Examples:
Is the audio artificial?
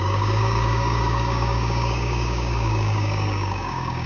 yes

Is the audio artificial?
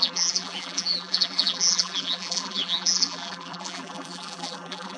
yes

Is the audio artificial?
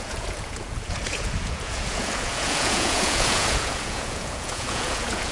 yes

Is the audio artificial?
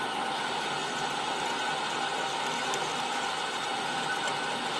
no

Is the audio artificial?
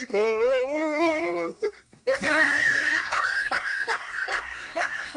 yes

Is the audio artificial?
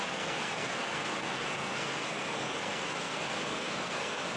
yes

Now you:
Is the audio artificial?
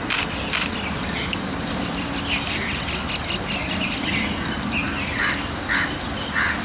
no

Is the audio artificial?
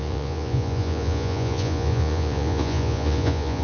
yes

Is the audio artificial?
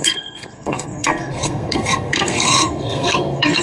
yes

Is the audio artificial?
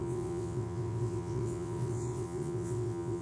yes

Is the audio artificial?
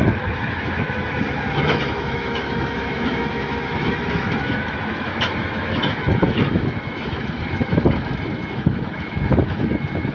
yes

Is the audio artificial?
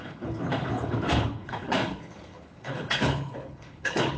yes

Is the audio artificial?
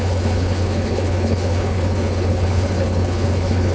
yes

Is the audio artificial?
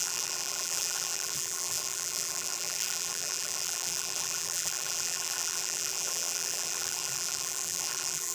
yes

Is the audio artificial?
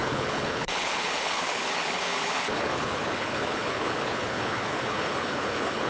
yes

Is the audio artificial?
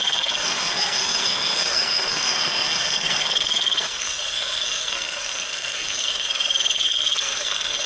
yes